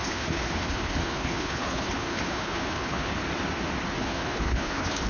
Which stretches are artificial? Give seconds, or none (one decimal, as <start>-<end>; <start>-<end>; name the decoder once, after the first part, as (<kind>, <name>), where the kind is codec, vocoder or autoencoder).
0.0-3.1 (codec, HILCodec); 4.0-5.1